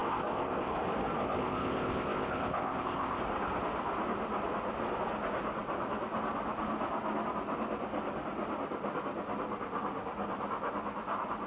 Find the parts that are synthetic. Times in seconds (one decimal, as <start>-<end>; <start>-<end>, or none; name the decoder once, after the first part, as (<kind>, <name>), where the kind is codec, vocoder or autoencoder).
0.0-0.7 (codec, ZipCodec); 1.2-3.2

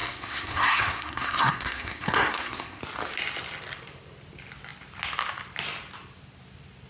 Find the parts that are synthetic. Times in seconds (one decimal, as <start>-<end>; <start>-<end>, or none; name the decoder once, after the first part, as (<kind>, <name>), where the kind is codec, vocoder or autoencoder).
0.0-2.8 (codec, SNAC)

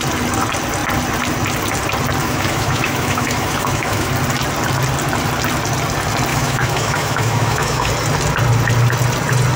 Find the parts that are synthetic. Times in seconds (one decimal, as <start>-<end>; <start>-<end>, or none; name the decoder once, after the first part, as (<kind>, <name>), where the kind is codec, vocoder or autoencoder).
2.2-4.1 (autoencoder, DAC-VAE); 6.3-7.9